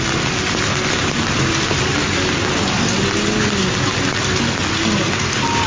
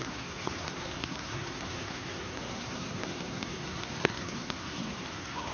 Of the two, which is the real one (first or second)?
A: first